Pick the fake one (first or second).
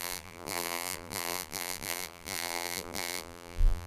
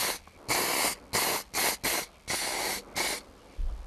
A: first